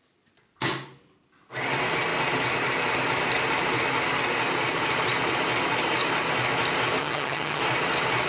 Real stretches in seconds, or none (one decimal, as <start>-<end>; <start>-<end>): 0.0-7.0; 7.6-8.3